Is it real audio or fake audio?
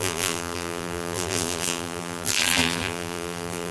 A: fake